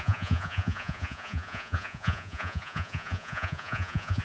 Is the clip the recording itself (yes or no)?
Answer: no